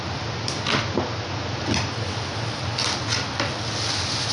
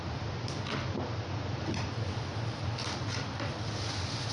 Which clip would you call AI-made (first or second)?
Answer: second